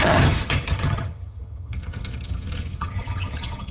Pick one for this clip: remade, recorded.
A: remade